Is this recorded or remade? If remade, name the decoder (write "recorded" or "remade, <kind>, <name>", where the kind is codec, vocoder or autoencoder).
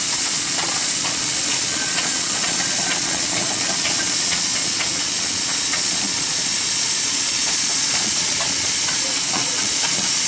remade, vocoder, Vocos